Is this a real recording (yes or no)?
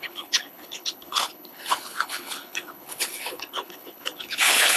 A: no